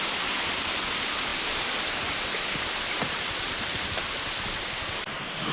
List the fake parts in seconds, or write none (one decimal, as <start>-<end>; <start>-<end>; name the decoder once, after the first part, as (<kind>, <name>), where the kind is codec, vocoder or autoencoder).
none